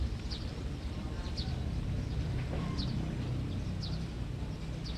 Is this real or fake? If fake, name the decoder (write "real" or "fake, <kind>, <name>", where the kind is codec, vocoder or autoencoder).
real